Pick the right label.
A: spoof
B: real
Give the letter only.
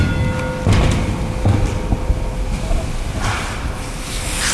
B